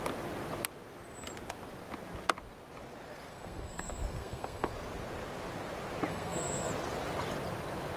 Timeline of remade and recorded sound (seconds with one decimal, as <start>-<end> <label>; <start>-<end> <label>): 0.0-3.3 recorded; 3.3-4.7 remade; 4.7-6.1 recorded; 6.1-6.7 remade; 6.7-8.0 recorded